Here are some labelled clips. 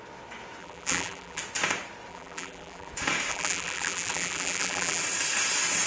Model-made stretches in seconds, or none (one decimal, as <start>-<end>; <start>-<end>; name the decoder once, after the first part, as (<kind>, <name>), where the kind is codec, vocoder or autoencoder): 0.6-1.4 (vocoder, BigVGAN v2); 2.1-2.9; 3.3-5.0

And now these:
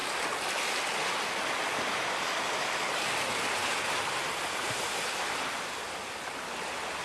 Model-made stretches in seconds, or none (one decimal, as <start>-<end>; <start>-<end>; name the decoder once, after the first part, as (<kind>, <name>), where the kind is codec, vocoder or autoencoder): none

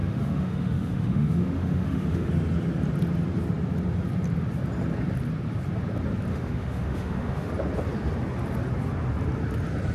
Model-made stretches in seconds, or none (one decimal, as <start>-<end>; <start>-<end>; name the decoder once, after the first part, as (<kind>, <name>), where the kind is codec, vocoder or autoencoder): 0.0-2.3 (autoencoder, DAC-VAE); 6.3-7.5

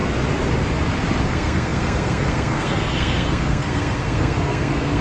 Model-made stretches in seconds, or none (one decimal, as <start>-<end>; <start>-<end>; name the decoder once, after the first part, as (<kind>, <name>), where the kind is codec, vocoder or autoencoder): 1.2-5.0 (codec, SNAC)

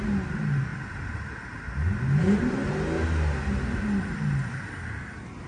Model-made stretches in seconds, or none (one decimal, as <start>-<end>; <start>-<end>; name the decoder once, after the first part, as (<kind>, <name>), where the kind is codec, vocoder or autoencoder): none